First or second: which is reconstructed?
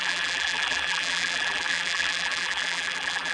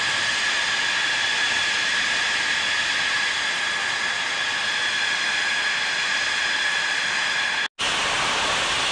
first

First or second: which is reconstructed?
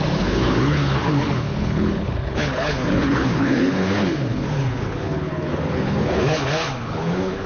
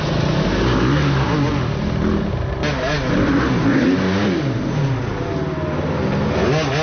first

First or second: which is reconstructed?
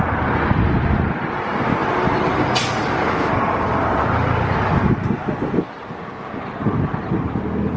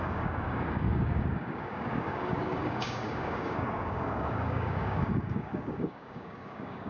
second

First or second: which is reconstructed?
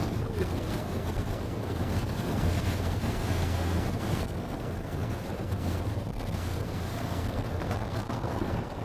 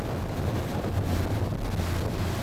first